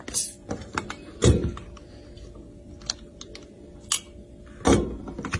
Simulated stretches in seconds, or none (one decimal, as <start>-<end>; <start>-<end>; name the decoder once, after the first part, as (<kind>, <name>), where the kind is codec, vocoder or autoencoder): none